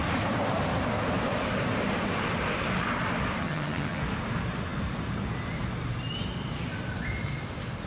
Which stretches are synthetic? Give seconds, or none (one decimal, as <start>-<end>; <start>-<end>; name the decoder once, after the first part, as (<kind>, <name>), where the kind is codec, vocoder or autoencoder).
3.4-4.0 (vocoder, HiFi-GAN)